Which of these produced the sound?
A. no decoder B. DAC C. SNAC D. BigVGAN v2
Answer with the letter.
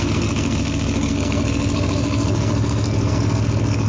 C